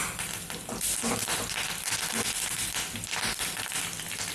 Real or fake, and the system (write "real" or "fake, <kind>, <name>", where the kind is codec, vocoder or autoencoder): real